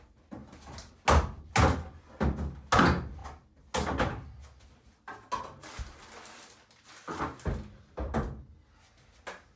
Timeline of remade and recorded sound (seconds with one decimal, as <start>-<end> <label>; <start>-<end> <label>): 0.0-9.6 recorded